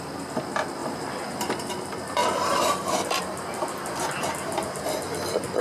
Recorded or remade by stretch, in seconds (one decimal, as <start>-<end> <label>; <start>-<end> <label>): 0.0-2.2 recorded; 2.2-4.2 remade; 4.2-5.6 recorded